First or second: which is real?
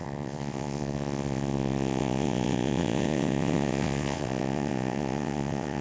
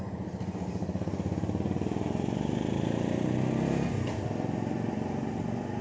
second